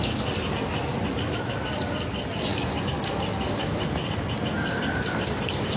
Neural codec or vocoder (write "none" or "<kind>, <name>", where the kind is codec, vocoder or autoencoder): none